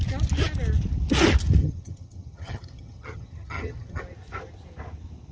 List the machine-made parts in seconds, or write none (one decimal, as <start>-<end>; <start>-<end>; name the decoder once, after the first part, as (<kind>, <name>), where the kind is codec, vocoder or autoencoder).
1.6-4.0 (vocoder, HiFi-GAN)